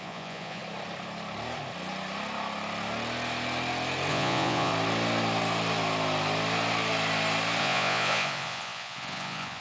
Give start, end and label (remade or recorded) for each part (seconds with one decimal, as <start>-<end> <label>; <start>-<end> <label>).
0.0-0.6 remade; 0.6-4.1 recorded; 4.1-4.7 remade; 4.7-7.6 recorded; 7.6-9.6 remade